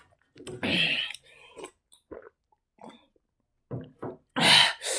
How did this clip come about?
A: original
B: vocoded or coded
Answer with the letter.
A